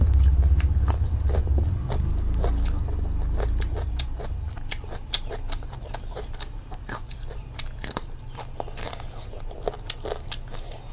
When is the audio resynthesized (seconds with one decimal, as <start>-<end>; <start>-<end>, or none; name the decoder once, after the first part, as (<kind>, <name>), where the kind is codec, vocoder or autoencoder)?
5.0-7.6 (vocoder, BigVGAN v2)